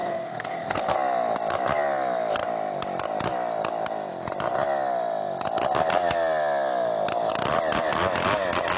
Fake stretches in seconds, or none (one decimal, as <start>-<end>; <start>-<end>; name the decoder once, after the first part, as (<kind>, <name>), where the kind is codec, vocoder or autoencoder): 0.0-0.9 (codec, SNAC)